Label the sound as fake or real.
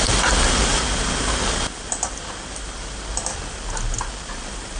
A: real